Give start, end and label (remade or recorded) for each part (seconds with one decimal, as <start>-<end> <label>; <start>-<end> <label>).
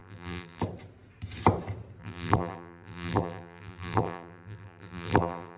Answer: 0.0-0.6 remade; 0.6-2.0 recorded; 2.0-5.6 remade